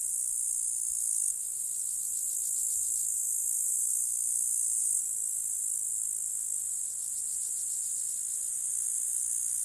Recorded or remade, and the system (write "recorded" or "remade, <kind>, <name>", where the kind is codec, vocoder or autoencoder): recorded